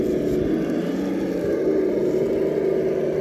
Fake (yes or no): no